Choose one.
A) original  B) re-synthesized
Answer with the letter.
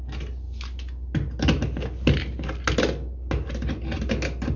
A